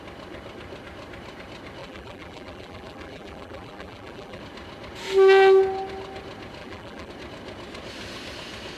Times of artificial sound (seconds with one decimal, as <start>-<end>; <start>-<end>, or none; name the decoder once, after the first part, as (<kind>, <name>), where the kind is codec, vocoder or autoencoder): 1.8-4.4 (vocoder, BigVGAN v2); 6.6-7.1